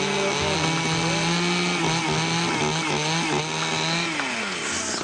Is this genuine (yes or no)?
yes